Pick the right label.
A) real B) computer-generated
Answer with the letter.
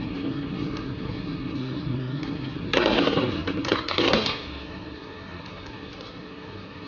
B